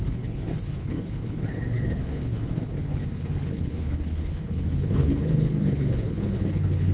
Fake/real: fake